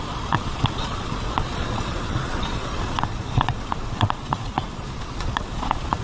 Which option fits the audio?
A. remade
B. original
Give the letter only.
A